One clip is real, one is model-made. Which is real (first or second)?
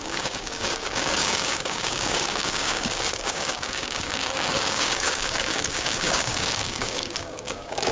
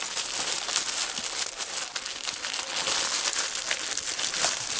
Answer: second